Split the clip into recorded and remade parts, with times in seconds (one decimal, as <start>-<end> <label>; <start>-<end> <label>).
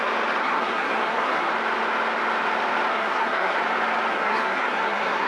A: 0.0-0.4 recorded; 0.4-1.5 remade; 1.5-2.9 recorded; 2.9-3.6 remade; 3.6-4.1 recorded; 4.1-5.3 remade